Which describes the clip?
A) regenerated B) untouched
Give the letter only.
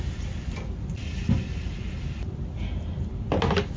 B